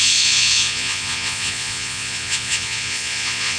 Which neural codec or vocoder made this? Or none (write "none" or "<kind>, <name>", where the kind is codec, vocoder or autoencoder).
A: vocoder, Vocos